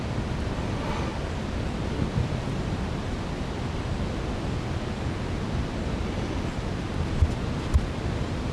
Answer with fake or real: real